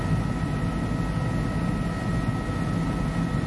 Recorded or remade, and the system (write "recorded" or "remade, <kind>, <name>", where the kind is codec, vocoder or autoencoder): recorded